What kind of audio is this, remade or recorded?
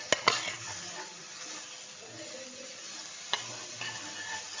recorded